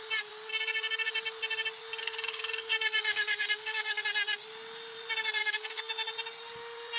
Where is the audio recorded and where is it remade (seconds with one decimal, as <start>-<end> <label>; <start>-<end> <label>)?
0.0-0.5 recorded; 0.5-1.1 remade; 1.1-2.0 recorded; 2.0-4.0 remade; 4.0-5.4 recorded; 5.4-5.9 remade; 5.9-7.0 recorded